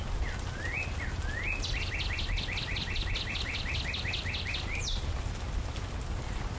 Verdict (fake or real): real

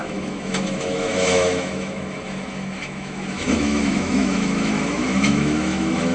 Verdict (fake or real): fake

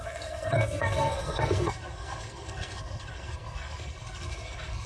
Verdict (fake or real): fake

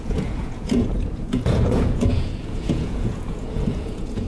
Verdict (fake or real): fake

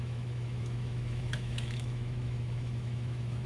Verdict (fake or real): fake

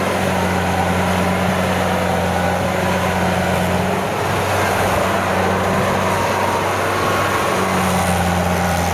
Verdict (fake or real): real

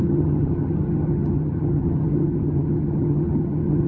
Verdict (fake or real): fake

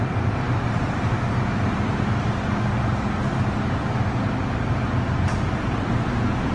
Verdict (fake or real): real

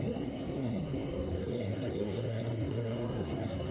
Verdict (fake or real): fake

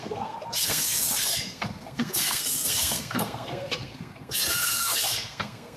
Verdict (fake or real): fake